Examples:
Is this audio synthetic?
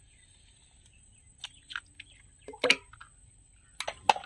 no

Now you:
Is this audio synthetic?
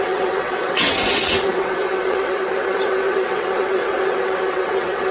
yes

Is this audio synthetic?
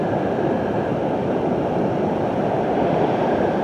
no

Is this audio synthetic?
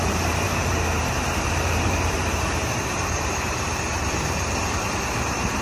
yes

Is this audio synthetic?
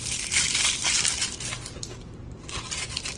no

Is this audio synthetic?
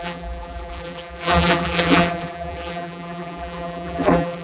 yes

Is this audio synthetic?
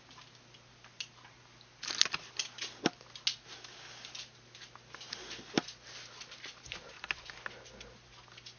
no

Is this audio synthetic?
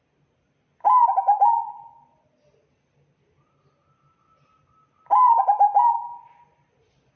no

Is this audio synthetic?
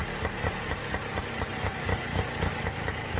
no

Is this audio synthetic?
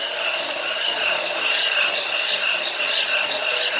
no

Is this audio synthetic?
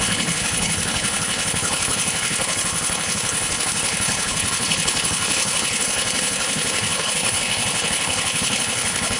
yes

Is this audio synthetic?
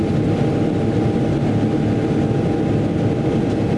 no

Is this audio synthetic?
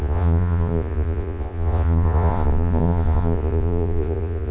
yes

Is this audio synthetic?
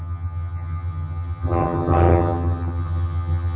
yes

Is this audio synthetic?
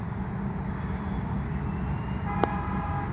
no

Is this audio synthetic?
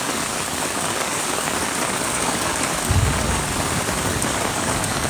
yes